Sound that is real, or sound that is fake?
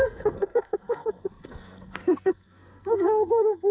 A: fake